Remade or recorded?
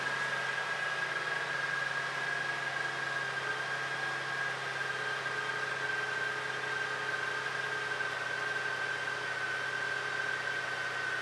recorded